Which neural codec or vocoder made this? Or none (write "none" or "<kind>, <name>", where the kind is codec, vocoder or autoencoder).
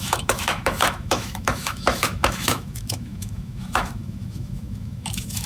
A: autoencoder, DAC-VAE